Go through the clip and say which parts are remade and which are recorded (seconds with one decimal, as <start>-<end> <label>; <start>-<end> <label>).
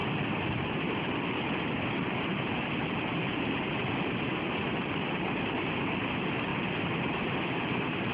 0.0-8.1 recorded